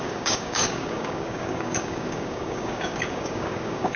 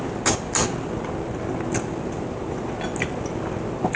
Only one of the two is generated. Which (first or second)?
first